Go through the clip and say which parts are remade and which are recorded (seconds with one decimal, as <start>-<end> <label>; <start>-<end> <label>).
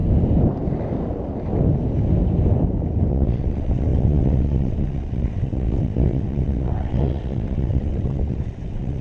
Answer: 0.0-3.1 recorded; 3.1-9.0 remade